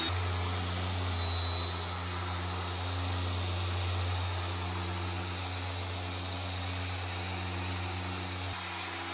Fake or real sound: real